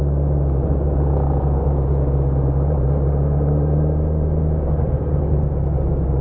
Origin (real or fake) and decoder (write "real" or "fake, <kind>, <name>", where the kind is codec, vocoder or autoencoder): real